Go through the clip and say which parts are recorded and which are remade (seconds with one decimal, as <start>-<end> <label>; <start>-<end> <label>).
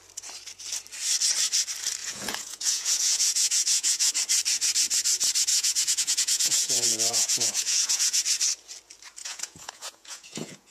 0.0-2.0 recorded; 2.0-4.1 remade; 4.1-5.5 recorded; 5.5-8.2 remade; 8.2-9.2 recorded; 9.2-10.7 remade